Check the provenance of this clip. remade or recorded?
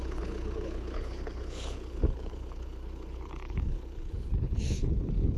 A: remade